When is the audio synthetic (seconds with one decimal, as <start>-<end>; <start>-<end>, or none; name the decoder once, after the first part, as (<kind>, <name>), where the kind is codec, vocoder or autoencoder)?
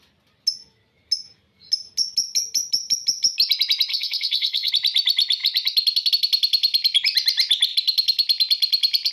3.9-4.7 (codec, SNAC)